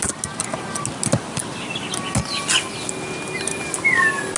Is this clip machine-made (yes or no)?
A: no